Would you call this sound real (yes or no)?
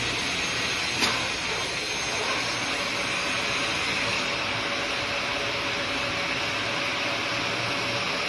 yes